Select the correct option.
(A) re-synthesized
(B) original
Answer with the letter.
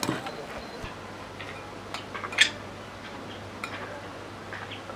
B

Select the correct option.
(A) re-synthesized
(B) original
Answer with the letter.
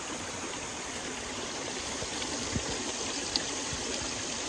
A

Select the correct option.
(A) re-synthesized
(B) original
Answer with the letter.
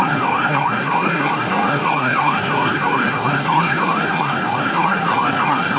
A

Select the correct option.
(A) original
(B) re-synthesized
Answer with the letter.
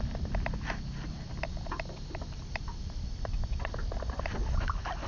A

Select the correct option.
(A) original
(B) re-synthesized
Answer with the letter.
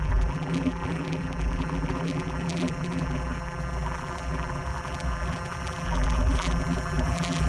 B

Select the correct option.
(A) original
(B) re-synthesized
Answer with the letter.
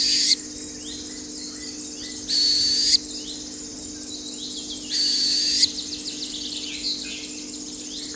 A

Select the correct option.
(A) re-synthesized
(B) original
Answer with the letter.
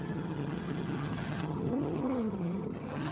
A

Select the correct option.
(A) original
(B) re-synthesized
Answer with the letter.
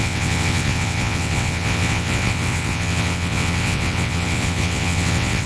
B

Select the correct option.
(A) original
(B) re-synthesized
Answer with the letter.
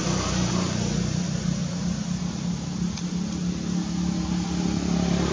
A